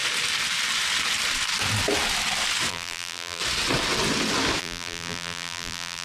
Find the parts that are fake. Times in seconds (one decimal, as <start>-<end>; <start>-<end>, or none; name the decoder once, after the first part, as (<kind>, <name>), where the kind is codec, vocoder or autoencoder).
2.7-3.4 (vocoder, BigVGAN v2); 4.6-6.0